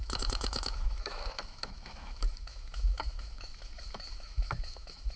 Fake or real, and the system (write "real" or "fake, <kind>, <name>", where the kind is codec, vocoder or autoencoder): fake, autoencoder, DAC-VAE